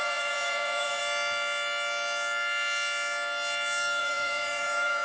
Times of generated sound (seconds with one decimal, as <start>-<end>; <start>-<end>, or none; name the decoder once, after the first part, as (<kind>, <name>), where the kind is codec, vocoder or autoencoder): 0.0-1.0 (vocoder, Vocos); 4.0-5.0